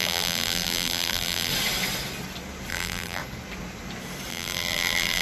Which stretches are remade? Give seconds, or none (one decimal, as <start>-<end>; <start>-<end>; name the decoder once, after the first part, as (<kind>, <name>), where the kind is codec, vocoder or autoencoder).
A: 0.0-1.5 (vocoder, BigVGAN v2); 2.7-3.2; 4.3-5.2

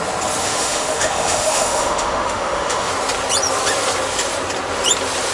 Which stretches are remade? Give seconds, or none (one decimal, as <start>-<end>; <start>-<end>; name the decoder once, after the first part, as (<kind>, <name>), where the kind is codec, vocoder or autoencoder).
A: 0.4-2.9 (autoencoder, DAC-VAE)